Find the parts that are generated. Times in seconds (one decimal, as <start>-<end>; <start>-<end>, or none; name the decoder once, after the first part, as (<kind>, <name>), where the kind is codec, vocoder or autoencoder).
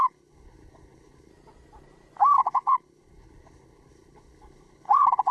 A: 0.0-1.3 (codec, HILCodec); 2.4-5.3